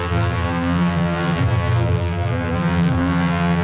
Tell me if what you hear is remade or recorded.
remade